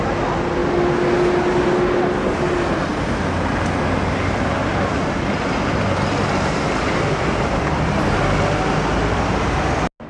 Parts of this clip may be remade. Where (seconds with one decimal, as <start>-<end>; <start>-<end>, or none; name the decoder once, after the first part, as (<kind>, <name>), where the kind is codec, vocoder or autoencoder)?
none